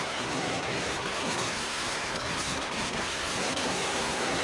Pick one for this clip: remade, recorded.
remade